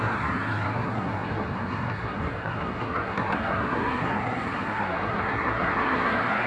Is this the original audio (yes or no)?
no